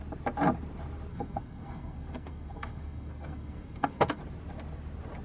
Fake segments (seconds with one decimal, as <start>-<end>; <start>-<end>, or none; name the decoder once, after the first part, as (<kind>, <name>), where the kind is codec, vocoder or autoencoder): 1.1-4.2 (codec, SNAC)